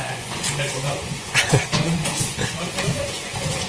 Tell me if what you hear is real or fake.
fake